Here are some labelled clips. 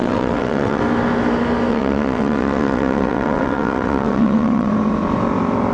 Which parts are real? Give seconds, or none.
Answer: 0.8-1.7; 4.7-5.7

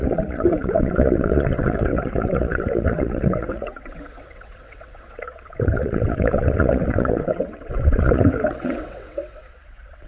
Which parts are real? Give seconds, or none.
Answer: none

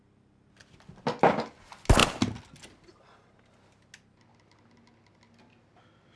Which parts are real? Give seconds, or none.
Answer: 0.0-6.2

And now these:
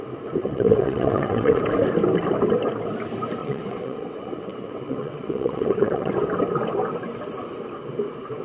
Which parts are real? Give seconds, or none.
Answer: 0.0-0.4; 1.6-3.4; 6.1-8.4

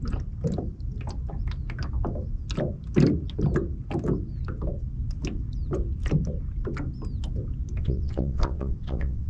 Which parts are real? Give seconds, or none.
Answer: 0.0-7.8